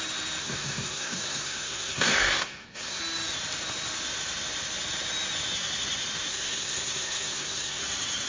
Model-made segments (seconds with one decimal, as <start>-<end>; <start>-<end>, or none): 0.4-3.0; 6.3-7.8